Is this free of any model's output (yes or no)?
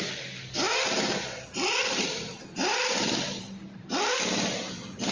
yes